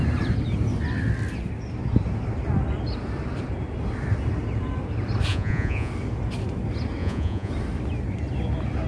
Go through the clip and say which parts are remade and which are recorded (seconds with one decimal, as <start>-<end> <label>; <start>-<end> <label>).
0.0-5.3 recorded; 5.3-5.9 remade; 5.9-7.0 recorded; 7.0-7.5 remade; 7.5-8.9 recorded

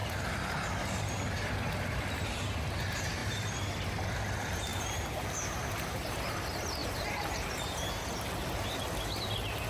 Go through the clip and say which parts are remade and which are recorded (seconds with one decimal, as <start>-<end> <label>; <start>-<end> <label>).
0.0-0.7 remade; 0.7-3.2 recorded; 3.2-3.9 remade; 3.9-4.7 recorded; 4.7-6.3 remade; 6.3-6.8 recorded; 6.8-7.8 remade; 7.8-9.7 recorded

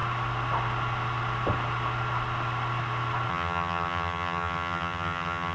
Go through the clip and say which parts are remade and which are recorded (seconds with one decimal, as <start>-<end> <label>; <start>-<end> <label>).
0.0-3.3 recorded; 3.3-5.5 remade

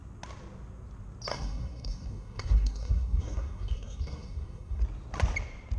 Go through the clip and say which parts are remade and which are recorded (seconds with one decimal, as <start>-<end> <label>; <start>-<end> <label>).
0.0-1.3 recorded; 1.3-4.8 remade; 4.8-5.8 recorded